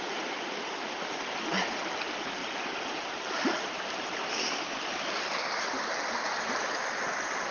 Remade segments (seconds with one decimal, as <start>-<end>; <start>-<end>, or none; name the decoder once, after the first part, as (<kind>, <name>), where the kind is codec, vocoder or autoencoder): 0.0-7.5 (vocoder, BigVGAN v2)